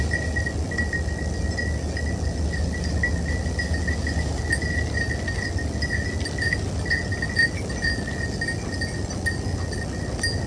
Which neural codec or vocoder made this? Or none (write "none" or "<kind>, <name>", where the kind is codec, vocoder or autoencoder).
none